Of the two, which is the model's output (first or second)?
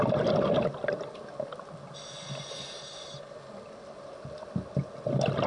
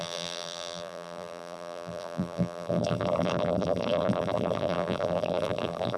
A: second